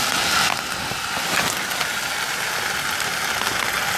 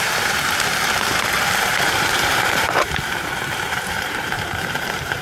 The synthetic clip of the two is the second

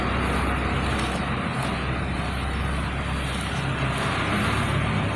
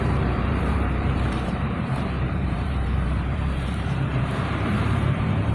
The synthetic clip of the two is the second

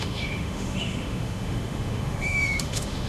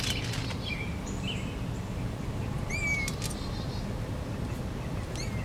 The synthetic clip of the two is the first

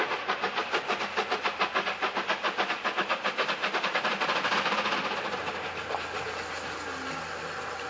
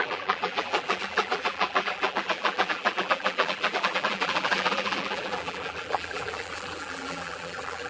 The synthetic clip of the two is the second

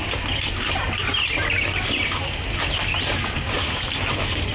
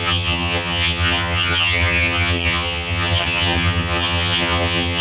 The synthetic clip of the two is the second